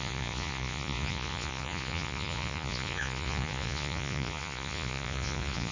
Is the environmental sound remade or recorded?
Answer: remade